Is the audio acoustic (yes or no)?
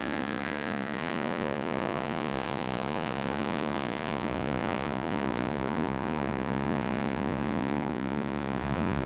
no